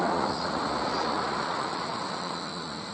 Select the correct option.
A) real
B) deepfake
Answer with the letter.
B